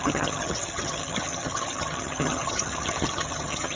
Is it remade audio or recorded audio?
remade